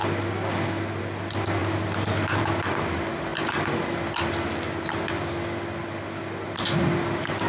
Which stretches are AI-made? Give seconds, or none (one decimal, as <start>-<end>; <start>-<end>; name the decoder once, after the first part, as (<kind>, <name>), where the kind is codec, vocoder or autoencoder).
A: none